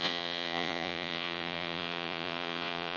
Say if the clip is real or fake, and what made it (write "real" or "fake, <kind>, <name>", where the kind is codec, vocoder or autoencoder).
fake, vocoder, Vocos